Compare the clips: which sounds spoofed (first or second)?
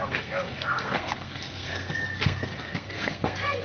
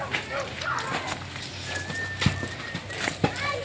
first